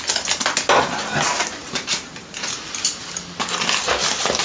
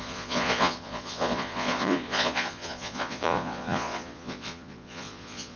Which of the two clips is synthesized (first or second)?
second